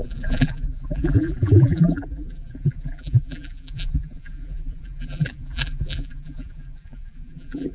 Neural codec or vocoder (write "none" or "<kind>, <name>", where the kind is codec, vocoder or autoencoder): vocoder, BigVGAN v2